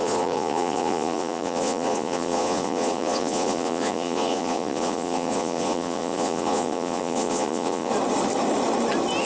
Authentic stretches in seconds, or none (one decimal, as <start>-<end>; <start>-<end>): 7.9-9.2